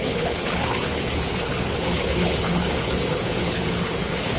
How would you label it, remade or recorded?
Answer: remade